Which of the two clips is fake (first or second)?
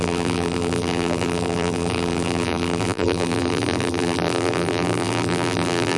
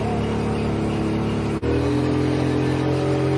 first